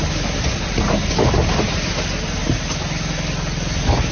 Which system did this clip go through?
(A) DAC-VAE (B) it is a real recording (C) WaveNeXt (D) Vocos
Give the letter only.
B